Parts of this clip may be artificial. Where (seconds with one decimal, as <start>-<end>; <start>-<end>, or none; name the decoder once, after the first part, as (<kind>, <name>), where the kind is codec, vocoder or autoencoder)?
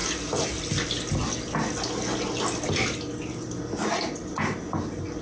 none